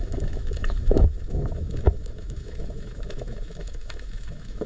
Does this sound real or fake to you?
fake